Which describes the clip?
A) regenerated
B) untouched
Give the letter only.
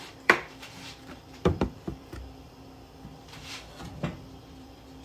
A